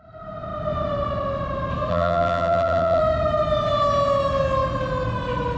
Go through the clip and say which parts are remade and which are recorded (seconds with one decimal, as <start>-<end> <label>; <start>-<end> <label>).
0.0-1.9 recorded; 1.9-3.0 remade; 3.0-5.6 recorded